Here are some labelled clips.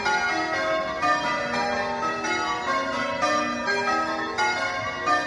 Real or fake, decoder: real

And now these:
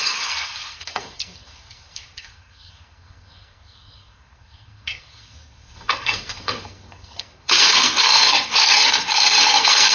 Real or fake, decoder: fake, codec, SNAC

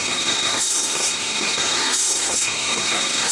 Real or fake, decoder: fake, codec, SNAC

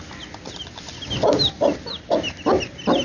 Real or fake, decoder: real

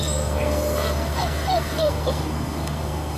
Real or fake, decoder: fake, codec, SNAC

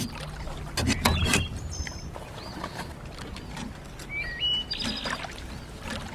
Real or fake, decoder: real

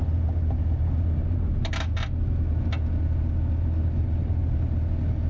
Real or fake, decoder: real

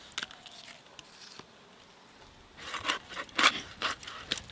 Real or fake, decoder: real